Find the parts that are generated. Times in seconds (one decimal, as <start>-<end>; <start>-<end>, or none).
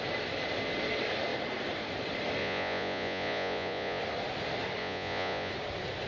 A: 2.4-4.0; 4.8-5.5